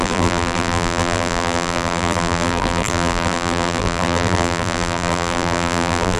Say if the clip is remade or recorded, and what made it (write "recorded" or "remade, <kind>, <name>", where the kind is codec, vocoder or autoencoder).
remade, vocoder, BigVGAN v2